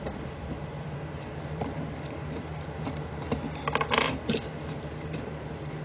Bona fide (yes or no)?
no